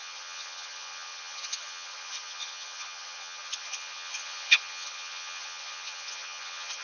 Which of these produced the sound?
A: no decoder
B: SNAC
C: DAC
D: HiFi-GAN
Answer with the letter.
D